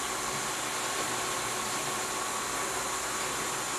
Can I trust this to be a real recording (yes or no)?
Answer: yes